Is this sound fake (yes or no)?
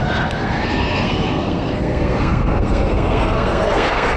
yes